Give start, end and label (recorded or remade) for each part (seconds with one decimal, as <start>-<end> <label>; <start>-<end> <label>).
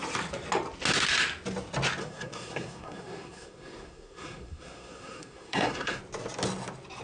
0.0-2.0 recorded; 2.0-6.0 remade; 6.0-7.0 recorded